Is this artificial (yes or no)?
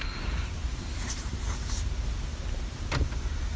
no